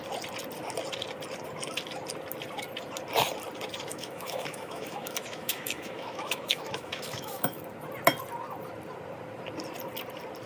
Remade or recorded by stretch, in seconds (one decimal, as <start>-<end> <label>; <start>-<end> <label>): 0.0-3.9 recorded; 3.9-7.6 remade; 7.6-10.5 recorded